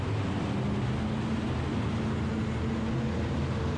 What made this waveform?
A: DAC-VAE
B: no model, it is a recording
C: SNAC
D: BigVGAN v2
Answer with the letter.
B